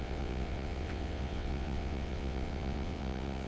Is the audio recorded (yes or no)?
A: no